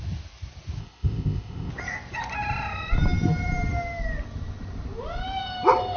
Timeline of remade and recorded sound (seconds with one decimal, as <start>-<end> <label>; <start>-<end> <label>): 0.0-0.8 recorded; 0.8-1.7 remade; 1.7-6.0 recorded